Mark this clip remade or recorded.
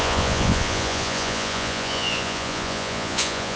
remade